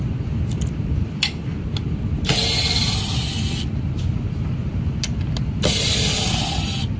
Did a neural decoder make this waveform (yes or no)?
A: no